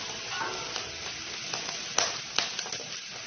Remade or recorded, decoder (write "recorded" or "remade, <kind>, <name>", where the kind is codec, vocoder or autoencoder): recorded